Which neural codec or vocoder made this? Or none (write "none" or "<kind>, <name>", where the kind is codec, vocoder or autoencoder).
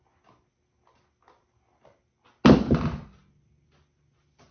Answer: none